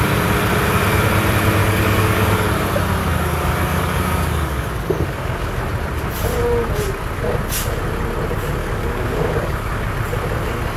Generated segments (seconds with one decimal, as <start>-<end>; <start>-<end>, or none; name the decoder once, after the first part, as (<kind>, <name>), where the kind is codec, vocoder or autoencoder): 1.6-2.5 (codec, DAC); 3.0-5.6; 8.6-9.9